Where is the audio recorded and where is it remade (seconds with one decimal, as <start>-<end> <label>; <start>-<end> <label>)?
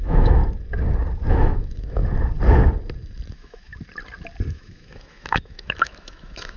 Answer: 0.0-0.4 remade; 0.4-1.3 recorded; 1.3-2.0 remade; 2.0-3.3 recorded; 3.3-3.7 remade; 3.7-4.5 recorded; 4.5-6.6 remade